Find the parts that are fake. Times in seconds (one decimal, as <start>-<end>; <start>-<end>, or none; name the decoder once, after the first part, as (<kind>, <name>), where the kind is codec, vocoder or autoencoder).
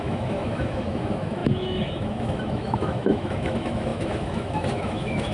0.0-5.3 (autoencoder, DAC-VAE)